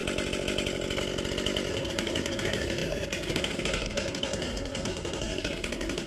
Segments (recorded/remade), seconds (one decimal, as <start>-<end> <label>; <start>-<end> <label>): 0.0-1.7 recorded; 1.7-6.1 remade